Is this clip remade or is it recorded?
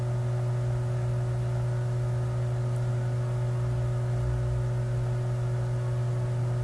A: recorded